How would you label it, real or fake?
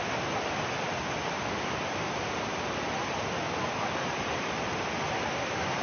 real